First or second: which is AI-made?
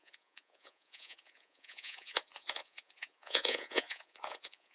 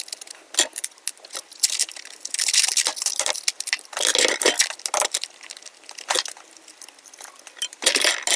first